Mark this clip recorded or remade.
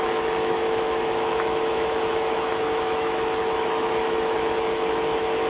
remade